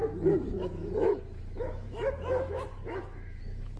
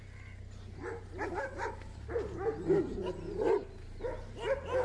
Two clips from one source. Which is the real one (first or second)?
second